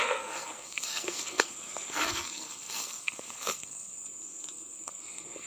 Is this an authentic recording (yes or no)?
no